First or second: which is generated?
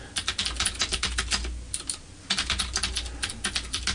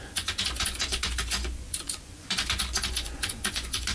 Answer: second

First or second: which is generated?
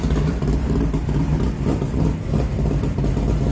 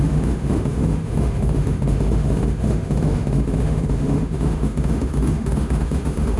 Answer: second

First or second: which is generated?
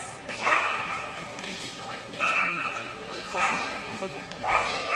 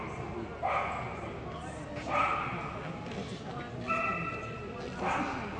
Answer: first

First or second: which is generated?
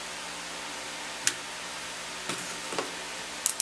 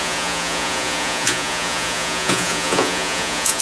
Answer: second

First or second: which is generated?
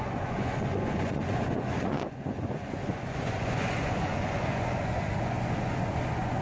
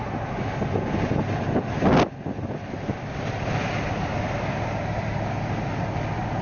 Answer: first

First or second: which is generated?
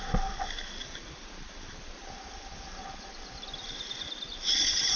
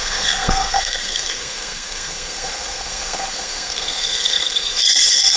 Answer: second